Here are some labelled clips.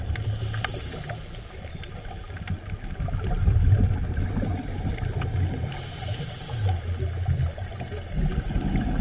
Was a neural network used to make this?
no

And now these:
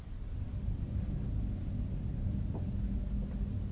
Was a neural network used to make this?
no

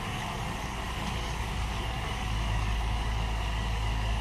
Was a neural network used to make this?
yes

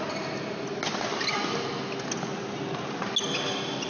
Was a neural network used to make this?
no